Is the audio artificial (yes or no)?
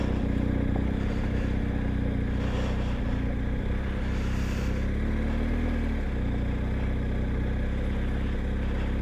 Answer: no